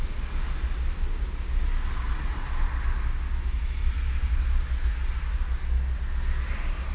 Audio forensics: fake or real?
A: real